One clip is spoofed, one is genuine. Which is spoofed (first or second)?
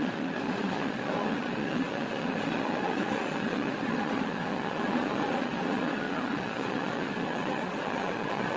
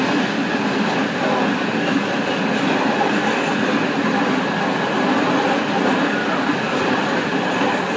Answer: first